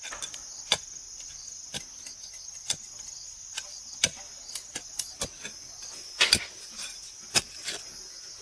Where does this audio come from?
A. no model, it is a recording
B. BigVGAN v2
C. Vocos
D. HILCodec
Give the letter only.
A